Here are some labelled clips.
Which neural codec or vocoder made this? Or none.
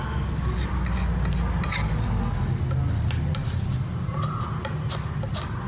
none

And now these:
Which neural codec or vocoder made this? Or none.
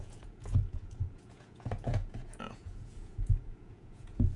vocoder, Vocos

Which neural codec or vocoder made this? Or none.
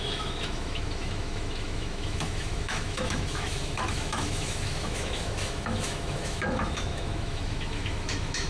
autoencoder, DAC-VAE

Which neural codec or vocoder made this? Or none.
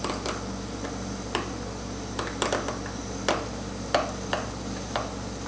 none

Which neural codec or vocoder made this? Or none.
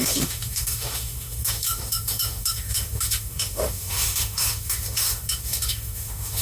autoencoder, DAC-VAE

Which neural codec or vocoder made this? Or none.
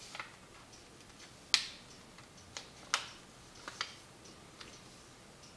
none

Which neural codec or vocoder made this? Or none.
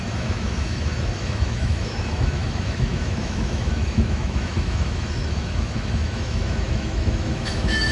autoencoder, DAC-VAE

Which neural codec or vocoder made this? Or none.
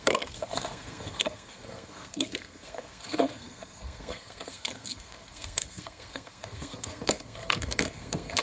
codec, SNAC